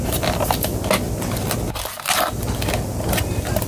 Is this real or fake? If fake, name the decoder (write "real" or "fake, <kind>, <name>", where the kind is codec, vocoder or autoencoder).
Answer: real